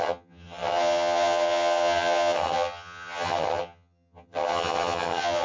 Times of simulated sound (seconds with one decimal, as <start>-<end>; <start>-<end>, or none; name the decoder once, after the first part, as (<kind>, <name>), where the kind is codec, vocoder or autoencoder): 0.0-5.4 (vocoder, HiFi-GAN)